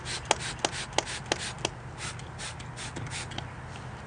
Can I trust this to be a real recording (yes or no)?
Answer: yes